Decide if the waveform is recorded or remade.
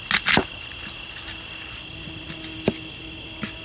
recorded